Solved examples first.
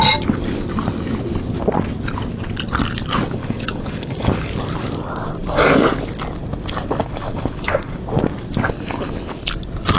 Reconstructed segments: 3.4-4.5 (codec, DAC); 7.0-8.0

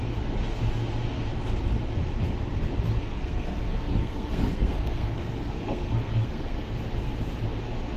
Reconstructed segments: 3.0-6.8 (codec, SNAC)

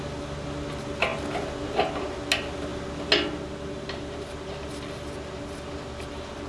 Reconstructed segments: none

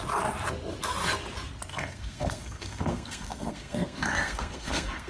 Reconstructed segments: 1.7-5.1 (codec, SNAC)